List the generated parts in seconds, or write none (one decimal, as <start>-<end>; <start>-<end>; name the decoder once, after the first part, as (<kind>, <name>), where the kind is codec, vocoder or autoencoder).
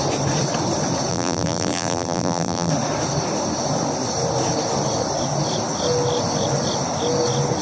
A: 1.1-2.7 (vocoder, BigVGAN v2)